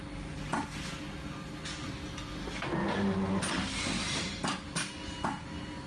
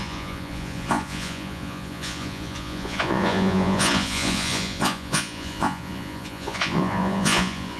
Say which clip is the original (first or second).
first